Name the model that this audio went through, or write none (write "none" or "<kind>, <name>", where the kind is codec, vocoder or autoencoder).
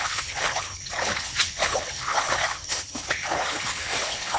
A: codec, HILCodec